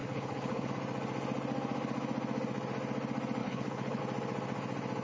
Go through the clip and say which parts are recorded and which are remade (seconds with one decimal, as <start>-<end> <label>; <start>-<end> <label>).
0.0-0.7 remade; 0.7-3.4 recorded; 3.4-4.0 remade; 4.0-5.0 recorded